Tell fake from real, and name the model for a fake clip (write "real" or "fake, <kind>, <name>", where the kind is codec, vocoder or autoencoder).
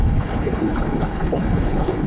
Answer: fake, codec, HILCodec